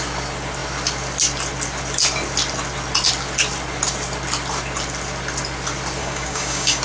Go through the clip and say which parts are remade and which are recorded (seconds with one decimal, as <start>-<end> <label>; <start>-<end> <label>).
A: 0.0-6.0 recorded; 6.0-6.8 remade